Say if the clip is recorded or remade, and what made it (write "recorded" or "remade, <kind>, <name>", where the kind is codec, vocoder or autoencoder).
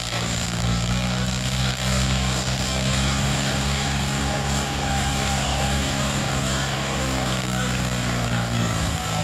remade, codec, DAC